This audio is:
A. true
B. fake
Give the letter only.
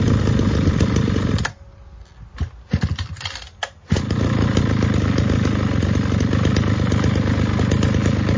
A